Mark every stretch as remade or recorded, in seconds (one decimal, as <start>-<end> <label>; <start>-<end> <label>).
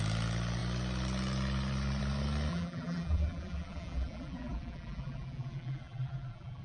0.0-2.5 recorded; 2.5-6.6 remade